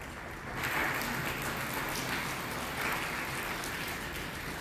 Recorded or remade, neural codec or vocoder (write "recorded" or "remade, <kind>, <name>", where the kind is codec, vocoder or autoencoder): recorded